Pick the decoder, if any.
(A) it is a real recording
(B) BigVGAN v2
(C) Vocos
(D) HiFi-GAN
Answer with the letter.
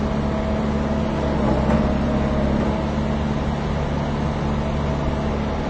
A